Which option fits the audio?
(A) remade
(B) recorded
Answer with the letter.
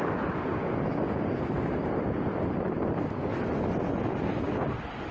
B